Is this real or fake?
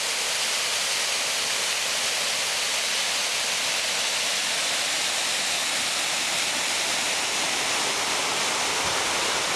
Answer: real